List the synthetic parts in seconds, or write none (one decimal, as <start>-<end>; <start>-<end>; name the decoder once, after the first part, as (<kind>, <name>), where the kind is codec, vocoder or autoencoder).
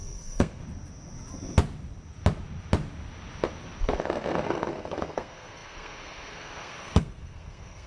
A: 0.0-0.6 (codec, SNAC); 3.8-7.9